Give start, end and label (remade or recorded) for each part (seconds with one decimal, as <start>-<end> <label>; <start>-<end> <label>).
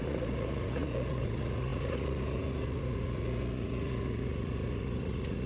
0.0-5.5 remade